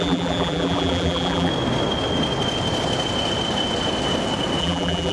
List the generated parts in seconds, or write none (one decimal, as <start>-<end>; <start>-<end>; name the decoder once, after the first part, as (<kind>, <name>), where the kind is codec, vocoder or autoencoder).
0.0-1.5 (vocoder, BigVGAN v2); 4.6-5.1